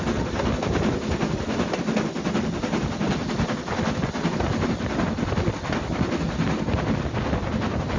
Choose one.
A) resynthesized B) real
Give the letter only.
B